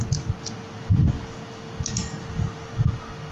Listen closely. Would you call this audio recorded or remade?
recorded